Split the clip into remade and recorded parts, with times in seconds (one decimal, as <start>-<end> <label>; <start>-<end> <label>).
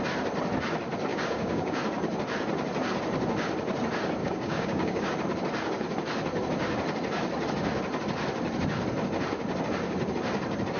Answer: 0.0-1.1 recorded; 1.1-1.8 remade; 1.8-4.2 recorded; 4.2-5.1 remade; 5.1-10.8 recorded